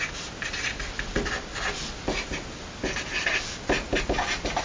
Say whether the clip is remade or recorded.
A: recorded